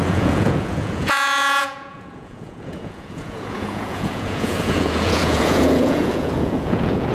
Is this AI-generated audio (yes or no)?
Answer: yes